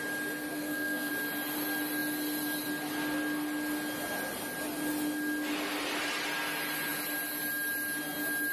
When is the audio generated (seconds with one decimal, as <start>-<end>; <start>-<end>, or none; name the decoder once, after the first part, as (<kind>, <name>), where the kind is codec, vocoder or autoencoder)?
0.5-1.1 (codec, SNAC)